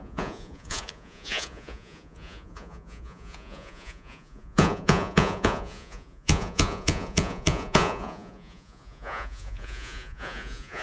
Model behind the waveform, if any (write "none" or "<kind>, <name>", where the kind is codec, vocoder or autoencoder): vocoder, Vocos